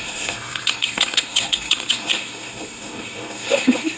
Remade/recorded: remade